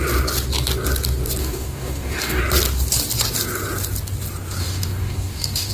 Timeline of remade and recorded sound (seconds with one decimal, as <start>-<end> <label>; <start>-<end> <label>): 0.0-1.4 recorded; 1.4-2.4 remade; 2.4-4.6 recorded; 4.6-5.7 remade